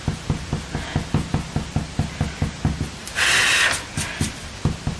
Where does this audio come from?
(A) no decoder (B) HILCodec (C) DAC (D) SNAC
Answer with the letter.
A